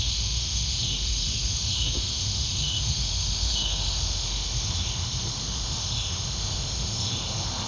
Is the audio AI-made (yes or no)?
yes